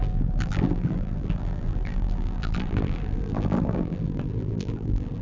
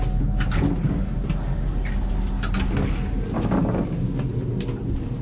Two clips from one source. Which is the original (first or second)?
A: second